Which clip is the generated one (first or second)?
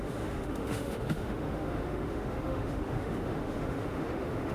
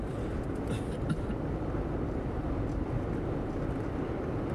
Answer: first